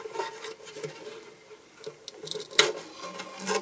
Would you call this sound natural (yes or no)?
yes